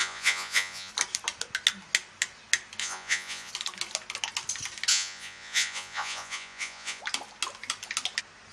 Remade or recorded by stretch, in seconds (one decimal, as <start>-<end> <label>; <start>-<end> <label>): 0.0-0.9 remade; 0.9-2.8 recorded; 2.8-3.5 remade; 3.5-4.9 recorded; 4.9-7.0 remade; 7.0-8.5 recorded